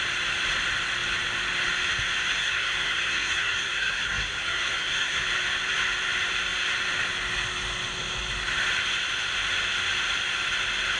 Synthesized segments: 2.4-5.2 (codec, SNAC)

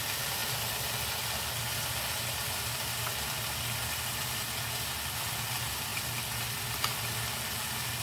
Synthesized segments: none

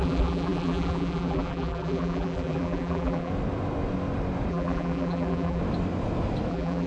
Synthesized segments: 0.0-3.3 (vocoder, BigVGAN v2); 4.5-5.6; 6.5-6.9